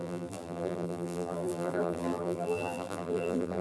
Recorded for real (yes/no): no